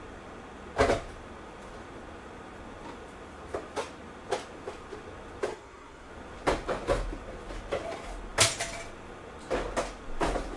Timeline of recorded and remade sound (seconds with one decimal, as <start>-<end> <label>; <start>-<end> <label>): 0.0-5.5 recorded; 5.5-6.1 remade; 6.1-10.6 recorded